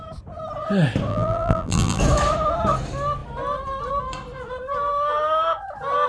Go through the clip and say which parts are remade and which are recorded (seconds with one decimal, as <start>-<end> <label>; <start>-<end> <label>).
0.0-1.1 recorded; 1.1-2.0 remade; 2.0-6.1 recorded